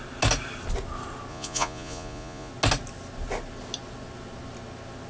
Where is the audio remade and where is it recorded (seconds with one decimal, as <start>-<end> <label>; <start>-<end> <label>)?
0.0-1.3 recorded; 1.3-2.5 remade; 2.5-5.1 recorded